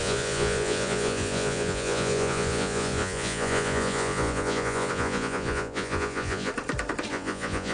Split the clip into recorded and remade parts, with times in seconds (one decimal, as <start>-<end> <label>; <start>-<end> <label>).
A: 0.0-6.5 remade; 6.5-7.1 recorded; 7.1-7.7 remade